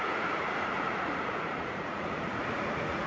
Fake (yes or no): yes